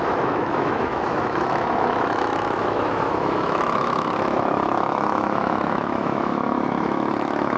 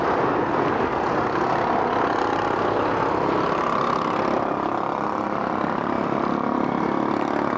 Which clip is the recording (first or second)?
second